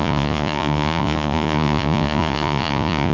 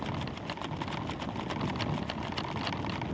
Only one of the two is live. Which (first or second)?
second